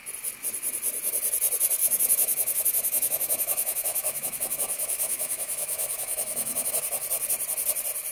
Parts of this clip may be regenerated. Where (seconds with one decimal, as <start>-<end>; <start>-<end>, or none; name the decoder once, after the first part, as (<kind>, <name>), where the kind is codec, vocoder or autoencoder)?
1.8-6.7 (autoencoder, DAC-VAE)